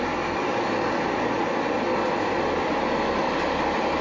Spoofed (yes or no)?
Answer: no